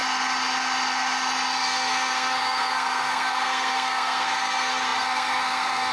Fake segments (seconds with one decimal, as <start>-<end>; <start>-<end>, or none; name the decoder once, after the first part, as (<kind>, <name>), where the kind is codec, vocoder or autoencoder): 1.6-5.9 (codec, SNAC)